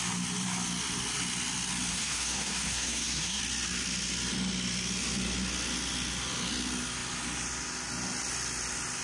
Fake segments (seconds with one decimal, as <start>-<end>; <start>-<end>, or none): 1.9-3.4

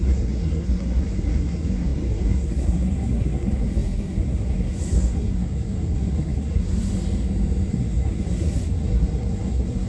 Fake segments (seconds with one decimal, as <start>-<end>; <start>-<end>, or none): 0.0-6.9; 7.7-9.9